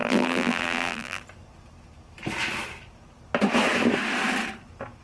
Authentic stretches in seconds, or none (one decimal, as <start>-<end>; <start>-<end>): 1.2-5.0